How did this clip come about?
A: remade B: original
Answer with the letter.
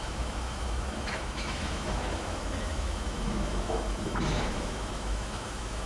A